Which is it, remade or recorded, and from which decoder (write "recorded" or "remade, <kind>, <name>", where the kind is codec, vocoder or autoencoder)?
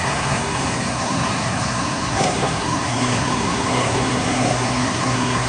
remade, codec, SNAC